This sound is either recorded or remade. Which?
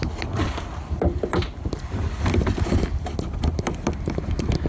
remade